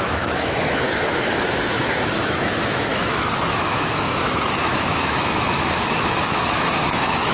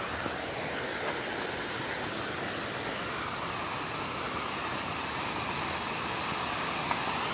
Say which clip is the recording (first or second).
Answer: second